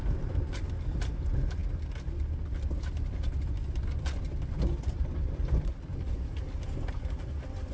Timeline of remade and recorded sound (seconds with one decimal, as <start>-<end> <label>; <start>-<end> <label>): 0.0-7.7 recorded